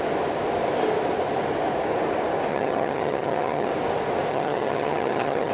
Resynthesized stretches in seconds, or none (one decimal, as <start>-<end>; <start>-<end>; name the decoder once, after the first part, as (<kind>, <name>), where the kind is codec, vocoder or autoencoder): 2.5-3.7 (vocoder, HiFi-GAN); 4.3-5.5